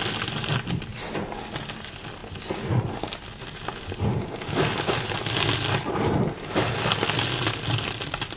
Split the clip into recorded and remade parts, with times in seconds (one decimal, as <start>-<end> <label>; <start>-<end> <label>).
0.0-8.4 recorded